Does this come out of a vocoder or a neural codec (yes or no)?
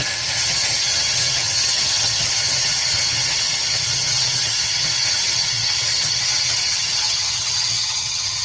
yes